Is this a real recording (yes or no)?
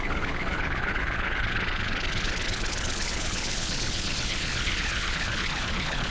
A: no